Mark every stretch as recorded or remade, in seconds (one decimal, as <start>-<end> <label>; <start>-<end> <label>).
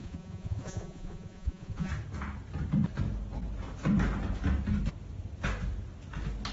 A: 0.0-1.9 remade; 1.9-6.5 recorded